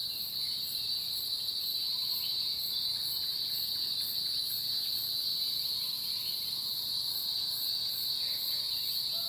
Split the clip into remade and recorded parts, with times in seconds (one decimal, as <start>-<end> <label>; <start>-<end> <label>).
0.0-5.3 recorded; 5.3-7.9 remade; 7.9-9.3 recorded